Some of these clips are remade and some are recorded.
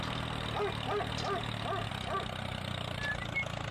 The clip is recorded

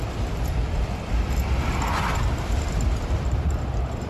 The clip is remade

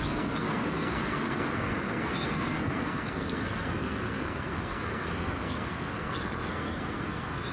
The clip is remade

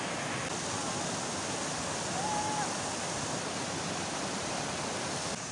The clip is recorded